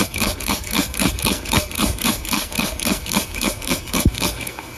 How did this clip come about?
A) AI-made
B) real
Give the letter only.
A